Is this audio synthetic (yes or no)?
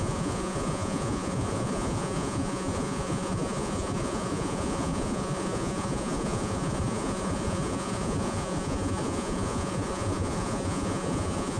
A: yes